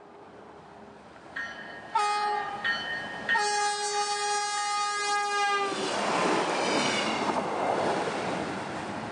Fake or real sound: real